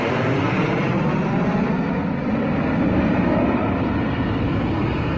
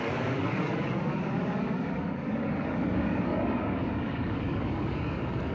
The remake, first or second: second